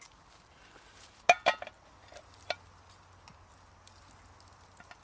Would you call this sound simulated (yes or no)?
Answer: no